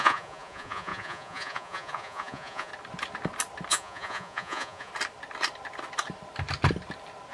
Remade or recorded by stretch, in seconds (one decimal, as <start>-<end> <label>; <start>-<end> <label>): 0.0-2.7 remade; 2.7-3.7 recorded; 3.7-4.9 remade; 4.9-7.3 recorded